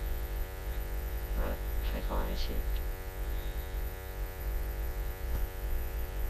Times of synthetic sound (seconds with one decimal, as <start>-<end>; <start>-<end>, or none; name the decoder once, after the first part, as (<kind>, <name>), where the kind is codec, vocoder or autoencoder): 0.0-6.3 (vocoder, Vocos)